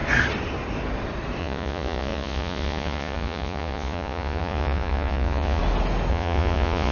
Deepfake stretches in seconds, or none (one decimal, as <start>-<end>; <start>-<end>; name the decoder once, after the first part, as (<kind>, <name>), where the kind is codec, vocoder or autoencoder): 1.4-5.6 (vocoder, Vocos); 6.1-6.9